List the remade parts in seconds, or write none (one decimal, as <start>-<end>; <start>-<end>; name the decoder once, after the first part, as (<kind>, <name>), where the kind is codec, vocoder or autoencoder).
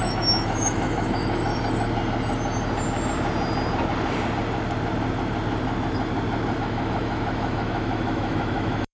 0.0-1.5 (autoencoder, DAC-VAE); 6.6-8.9